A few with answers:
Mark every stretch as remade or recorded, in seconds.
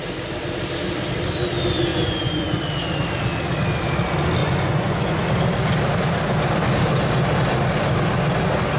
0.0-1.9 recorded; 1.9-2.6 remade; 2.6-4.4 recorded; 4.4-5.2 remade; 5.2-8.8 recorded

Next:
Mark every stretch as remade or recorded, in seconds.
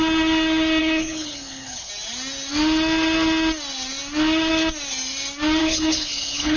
0.0-0.8 recorded; 0.8-1.9 remade; 1.9-5.6 recorded; 5.6-6.6 remade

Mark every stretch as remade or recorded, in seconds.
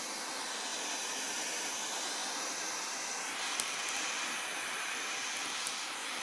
0.0-0.7 recorded; 0.7-1.7 remade; 1.7-2.2 recorded; 2.2-6.2 remade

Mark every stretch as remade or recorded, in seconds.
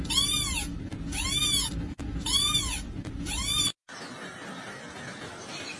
0.0-5.8 recorded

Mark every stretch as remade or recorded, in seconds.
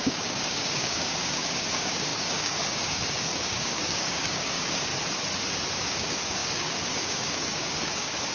0.0-4.9 remade; 4.9-5.8 recorded; 5.8-8.3 remade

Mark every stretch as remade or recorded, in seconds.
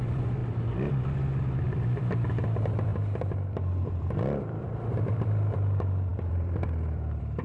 0.0-0.4 remade; 0.4-1.6 recorded; 1.6-7.4 remade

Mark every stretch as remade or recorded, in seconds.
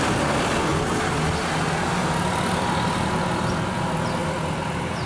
0.0-5.1 recorded